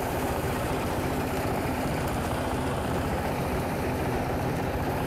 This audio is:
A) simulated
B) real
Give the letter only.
A